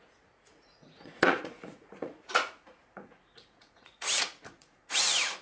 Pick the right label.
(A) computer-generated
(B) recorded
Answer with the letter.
A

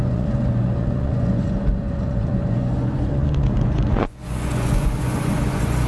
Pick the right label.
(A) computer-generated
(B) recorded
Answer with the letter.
A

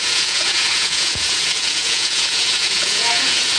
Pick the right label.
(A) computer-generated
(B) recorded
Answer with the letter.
A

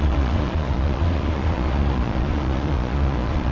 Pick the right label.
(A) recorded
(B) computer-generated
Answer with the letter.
B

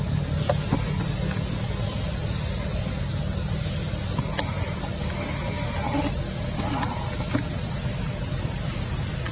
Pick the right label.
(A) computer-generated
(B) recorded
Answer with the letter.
B